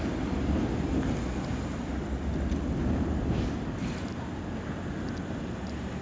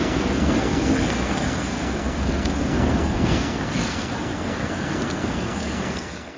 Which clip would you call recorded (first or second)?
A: first